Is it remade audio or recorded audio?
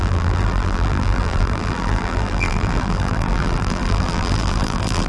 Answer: remade